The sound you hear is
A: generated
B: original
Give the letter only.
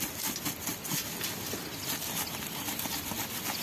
B